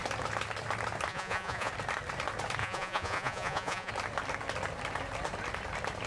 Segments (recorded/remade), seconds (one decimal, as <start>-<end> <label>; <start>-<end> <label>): 0.0-1.1 recorded; 1.1-1.7 remade; 1.7-2.6 recorded; 2.6-3.9 remade; 3.9-6.1 recorded